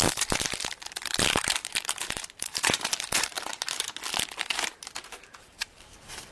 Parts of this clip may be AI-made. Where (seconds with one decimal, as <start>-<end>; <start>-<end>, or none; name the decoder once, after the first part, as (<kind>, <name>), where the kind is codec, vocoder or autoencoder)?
0.0-3.5 (vocoder, BigVGAN v2); 4.4-6.3